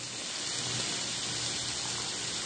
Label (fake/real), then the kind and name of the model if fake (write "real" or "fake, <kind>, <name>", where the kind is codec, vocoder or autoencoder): real